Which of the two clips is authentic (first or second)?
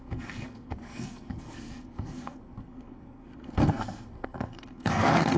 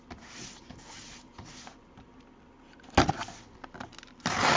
second